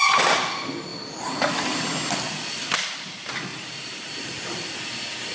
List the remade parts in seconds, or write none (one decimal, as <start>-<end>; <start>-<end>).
0.9-1.8; 3.5-4.7